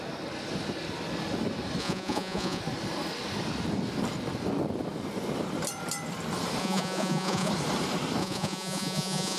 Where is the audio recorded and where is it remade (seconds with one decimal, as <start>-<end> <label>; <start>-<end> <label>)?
0.0-1.8 recorded; 1.8-2.6 remade; 2.6-6.6 recorded; 6.6-7.5 remade; 7.5-8.2 recorded; 8.2-9.4 remade